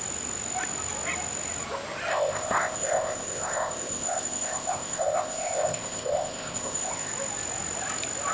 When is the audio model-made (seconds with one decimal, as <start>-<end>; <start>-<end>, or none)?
2.1-7.1